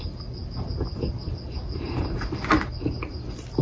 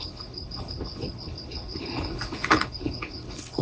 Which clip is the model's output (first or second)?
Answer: second